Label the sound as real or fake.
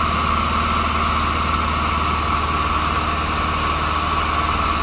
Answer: real